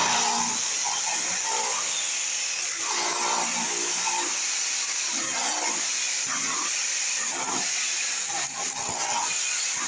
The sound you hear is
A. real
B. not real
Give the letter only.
A